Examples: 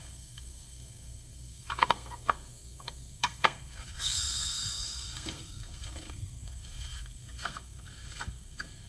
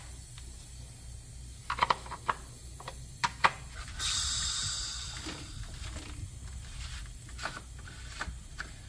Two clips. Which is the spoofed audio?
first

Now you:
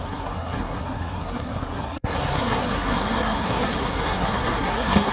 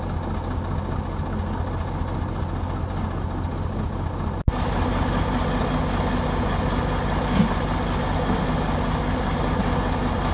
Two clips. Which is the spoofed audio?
first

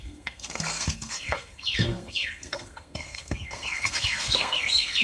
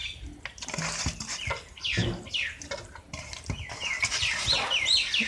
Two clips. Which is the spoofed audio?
first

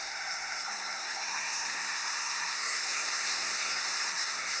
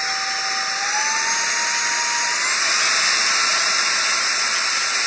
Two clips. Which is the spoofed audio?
first